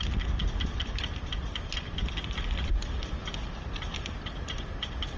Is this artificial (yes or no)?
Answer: no